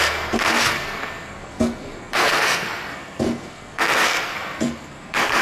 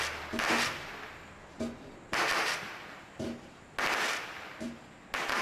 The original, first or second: second